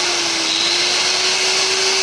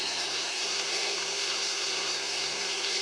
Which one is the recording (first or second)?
first